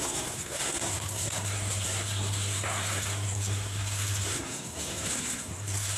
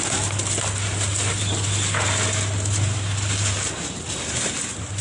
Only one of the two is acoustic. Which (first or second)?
second